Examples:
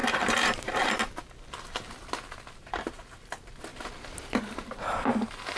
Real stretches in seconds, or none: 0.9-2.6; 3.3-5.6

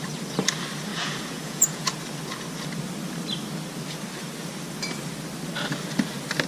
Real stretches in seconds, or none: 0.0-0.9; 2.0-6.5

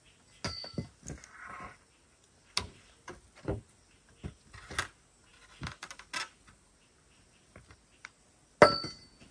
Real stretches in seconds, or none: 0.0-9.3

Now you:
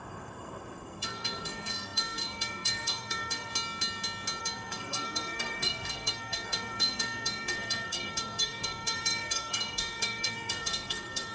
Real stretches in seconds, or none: 3.5-4.4

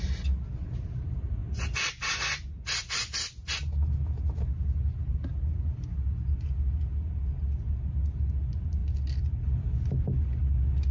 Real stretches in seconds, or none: 0.0-10.9

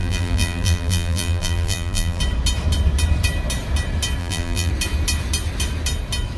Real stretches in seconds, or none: 2.2-4.2; 4.7-6.4

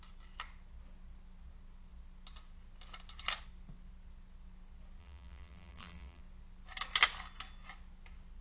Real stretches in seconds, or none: 0.0-5.0; 6.2-8.4

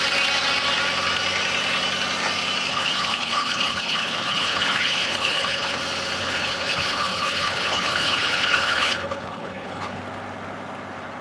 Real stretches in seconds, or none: 0.0-2.7; 5.8-6.2; 10.0-11.2